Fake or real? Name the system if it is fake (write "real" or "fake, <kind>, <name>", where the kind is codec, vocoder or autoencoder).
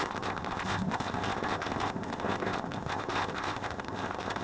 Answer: fake, codec, ZipCodec